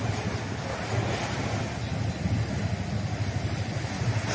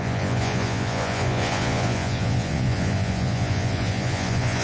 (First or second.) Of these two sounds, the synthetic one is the second